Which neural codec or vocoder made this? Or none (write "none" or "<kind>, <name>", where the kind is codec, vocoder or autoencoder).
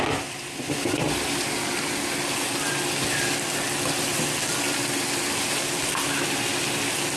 none